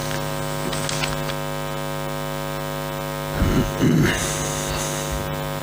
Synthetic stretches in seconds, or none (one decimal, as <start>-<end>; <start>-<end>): none